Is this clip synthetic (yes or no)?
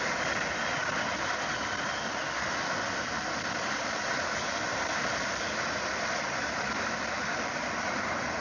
no